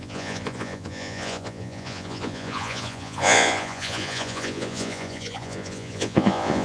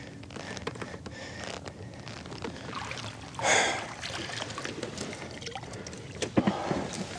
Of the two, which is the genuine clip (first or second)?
second